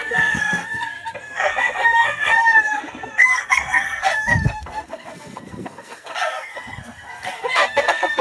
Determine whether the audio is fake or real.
fake